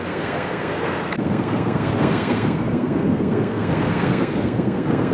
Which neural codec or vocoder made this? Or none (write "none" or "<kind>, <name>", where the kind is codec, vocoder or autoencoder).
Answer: codec, SNAC